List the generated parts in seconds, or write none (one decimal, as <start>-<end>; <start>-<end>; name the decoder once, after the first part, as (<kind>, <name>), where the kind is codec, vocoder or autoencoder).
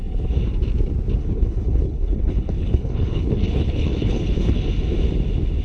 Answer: 1.2-4.6 (codec, HILCodec)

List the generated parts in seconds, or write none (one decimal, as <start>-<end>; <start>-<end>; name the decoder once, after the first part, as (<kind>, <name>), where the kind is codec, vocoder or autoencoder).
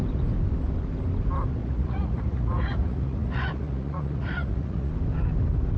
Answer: 1.6-4.9 (vocoder, Vocos)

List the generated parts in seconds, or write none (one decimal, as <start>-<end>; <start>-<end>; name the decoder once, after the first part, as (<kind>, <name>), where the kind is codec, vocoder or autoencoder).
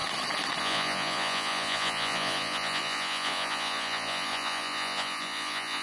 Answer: 0.6-5.8 (vocoder, Vocos)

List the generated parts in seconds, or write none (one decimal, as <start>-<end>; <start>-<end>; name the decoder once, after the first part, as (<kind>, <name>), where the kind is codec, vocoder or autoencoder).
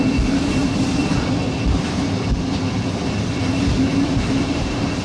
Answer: 3.9-5.0 (vocoder, BigVGAN v2)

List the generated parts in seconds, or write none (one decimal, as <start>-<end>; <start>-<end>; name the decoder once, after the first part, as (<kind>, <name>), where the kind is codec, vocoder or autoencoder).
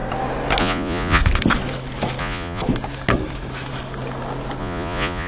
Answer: 0.6-1.2 (vocoder, Vocos); 2.2-2.6; 4.6-5.3